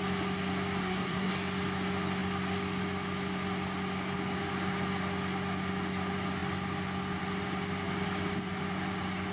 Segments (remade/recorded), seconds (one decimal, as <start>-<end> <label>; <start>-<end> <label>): 0.0-0.8 recorded; 0.8-1.3 remade; 1.3-9.3 recorded